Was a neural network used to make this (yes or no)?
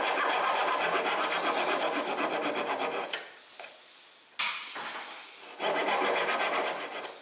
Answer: no